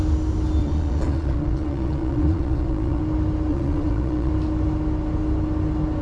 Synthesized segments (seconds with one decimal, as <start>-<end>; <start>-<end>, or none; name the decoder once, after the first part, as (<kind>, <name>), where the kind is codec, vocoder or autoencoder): 0.6-3.0 (vocoder, Vocos); 3.5-4.3